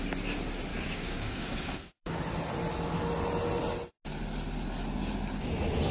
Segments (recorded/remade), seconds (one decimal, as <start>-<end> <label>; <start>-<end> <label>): 0.0-0.7 recorded; 0.7-2.2 remade; 2.2-5.9 recorded